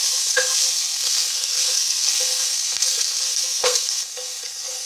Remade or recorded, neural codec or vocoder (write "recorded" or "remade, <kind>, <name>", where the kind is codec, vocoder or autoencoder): remade, codec, SNAC